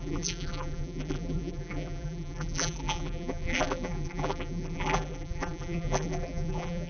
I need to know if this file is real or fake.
fake